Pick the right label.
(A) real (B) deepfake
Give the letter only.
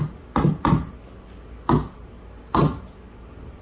A